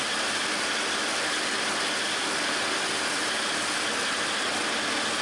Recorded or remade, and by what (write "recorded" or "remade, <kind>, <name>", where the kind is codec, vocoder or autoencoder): recorded